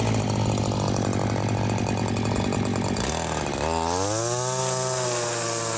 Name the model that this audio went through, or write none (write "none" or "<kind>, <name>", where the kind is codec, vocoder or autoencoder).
none